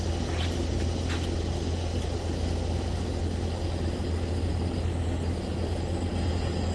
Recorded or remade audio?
recorded